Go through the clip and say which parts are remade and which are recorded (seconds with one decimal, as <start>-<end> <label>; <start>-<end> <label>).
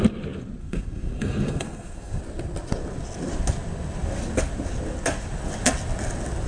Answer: 0.0-0.6 recorded; 0.6-2.2 remade; 2.2-6.5 recorded